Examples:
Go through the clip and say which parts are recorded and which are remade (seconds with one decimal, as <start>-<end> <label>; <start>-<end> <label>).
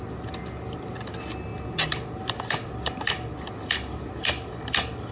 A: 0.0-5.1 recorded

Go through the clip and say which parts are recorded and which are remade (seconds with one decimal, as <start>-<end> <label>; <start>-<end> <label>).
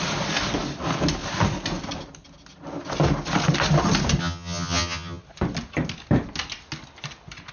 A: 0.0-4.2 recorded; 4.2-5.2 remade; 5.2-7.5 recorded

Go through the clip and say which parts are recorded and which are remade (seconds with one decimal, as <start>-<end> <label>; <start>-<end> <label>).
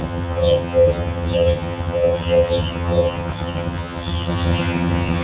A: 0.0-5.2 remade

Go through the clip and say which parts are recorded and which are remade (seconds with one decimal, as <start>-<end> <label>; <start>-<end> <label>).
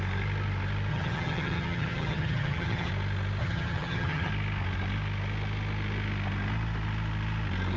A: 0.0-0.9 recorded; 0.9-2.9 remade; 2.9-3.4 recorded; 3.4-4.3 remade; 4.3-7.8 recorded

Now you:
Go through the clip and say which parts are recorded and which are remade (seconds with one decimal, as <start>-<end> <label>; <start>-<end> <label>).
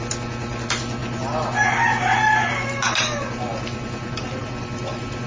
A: 0.0-5.3 recorded